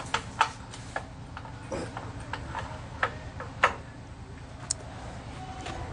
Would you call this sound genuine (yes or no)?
yes